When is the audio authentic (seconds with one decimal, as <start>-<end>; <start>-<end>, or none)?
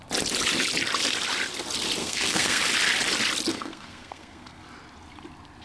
0.0-2.0; 2.6-3.5; 4.6-5.6